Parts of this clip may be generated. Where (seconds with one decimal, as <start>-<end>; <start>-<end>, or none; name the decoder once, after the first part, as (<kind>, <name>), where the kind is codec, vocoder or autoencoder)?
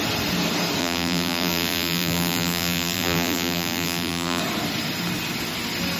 0.8-4.4 (vocoder, BigVGAN v2)